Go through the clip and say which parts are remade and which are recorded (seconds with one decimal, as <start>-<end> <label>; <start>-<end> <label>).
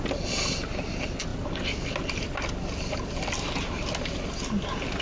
0.0-5.0 recorded